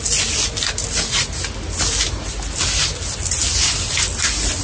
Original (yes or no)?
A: yes